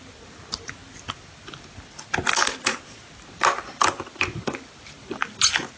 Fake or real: real